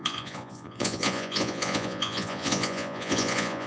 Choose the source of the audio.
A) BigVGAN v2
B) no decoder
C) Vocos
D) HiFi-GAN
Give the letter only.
C